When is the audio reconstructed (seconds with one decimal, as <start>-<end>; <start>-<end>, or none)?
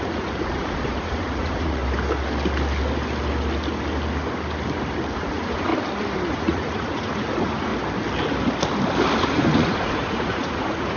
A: 0.0-1.8; 5.1-5.7; 6.3-7.7; 9.2-11.0